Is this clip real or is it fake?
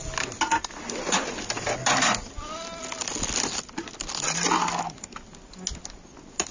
real